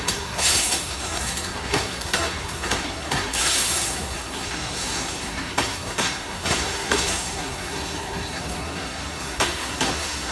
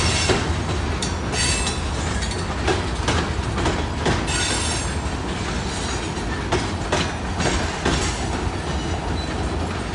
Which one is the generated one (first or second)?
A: first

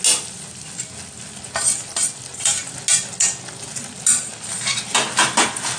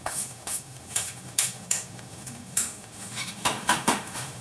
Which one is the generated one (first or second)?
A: second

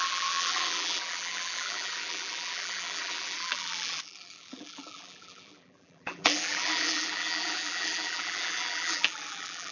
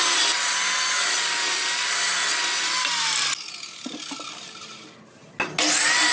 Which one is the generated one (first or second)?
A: first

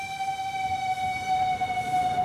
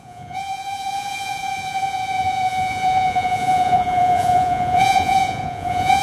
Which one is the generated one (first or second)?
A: second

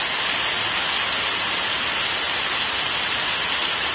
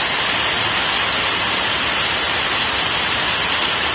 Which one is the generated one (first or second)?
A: second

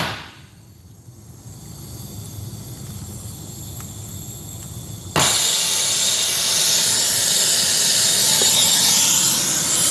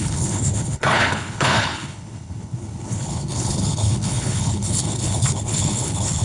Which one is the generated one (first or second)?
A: second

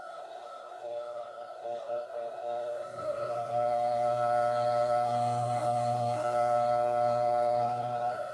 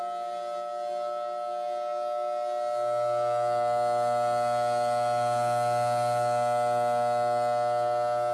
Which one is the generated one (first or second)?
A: first